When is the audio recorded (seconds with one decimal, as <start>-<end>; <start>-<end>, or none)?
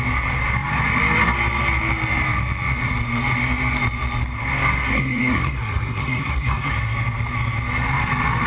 0.0-4.9; 6.7-8.5